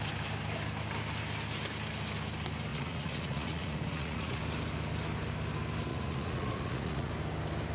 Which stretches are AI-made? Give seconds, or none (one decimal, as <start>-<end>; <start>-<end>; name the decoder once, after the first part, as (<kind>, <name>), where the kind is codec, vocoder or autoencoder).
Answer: 2.7-4.4 (vocoder, Vocos); 5.9-7.1